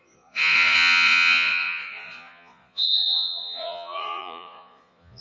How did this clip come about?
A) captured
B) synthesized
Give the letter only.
B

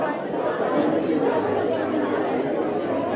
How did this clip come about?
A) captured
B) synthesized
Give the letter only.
A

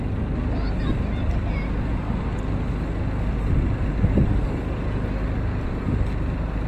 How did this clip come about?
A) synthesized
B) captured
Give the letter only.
B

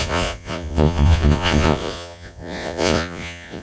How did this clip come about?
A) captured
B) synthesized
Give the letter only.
B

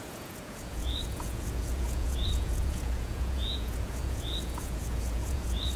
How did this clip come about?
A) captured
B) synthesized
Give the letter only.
B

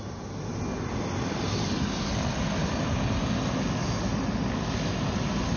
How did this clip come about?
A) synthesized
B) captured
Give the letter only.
B